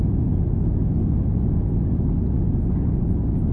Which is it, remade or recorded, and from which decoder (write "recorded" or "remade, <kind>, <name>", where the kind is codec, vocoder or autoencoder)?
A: recorded